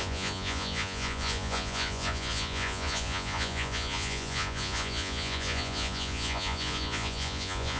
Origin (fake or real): fake